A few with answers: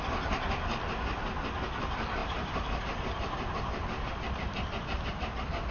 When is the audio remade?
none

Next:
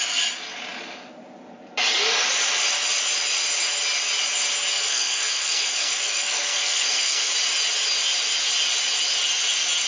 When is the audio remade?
4.7-7.3 (codec, SNAC)

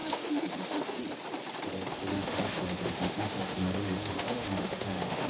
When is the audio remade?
0.0-1.0 (autoencoder, DAC-VAE); 2.1-5.3

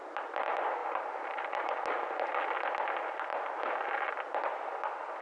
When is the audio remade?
0.8-2.3 (vocoder, BigVGAN v2); 3.3-4.1